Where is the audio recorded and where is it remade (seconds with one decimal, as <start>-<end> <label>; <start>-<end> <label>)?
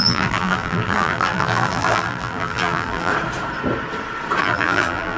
0.0-3.1 remade; 3.1-4.4 recorded; 4.4-5.2 remade